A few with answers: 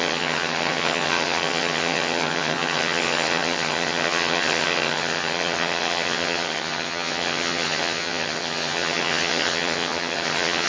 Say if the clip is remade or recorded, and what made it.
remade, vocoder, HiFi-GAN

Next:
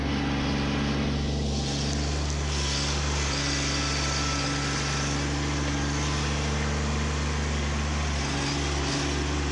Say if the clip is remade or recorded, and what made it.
recorded